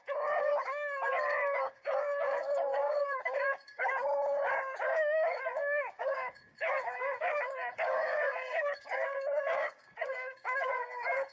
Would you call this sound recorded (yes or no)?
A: no